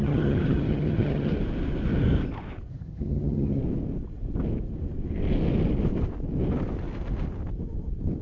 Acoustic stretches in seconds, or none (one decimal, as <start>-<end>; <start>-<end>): 1.3-2.7; 3.6-8.2